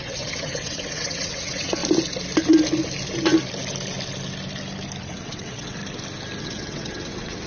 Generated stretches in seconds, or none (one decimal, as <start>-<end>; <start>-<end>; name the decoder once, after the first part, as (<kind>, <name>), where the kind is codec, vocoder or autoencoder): 0.0-1.8 (vocoder, WaveNeXt); 5.0-5.8; 6.4-7.5